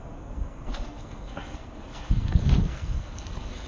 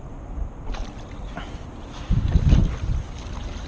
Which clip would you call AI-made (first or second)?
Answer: first